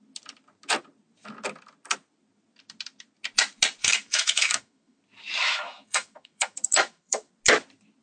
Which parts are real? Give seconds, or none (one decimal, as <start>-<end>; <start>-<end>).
0.0-3.8; 5.0-5.4; 7.3-8.0